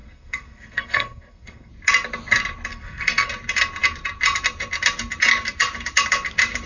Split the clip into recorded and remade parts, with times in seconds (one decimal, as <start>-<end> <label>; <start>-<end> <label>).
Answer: 0.0-1.7 remade; 1.7-2.7 recorded; 2.7-3.3 remade; 3.3-6.7 recorded